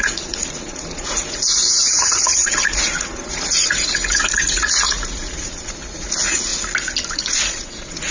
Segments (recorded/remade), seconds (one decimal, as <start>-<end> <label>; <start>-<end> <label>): 0.0-6.5 remade; 6.5-7.1 recorded; 7.1-8.1 remade